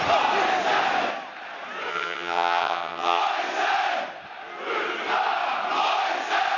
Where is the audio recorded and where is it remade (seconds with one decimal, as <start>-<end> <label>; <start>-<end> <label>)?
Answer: 0.0-1.9 recorded; 1.9-3.2 remade; 3.2-6.6 recorded